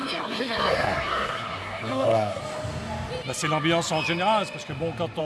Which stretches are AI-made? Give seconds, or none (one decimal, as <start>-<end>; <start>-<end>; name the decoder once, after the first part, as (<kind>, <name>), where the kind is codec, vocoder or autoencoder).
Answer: 0.0-2.4 (codec, SNAC)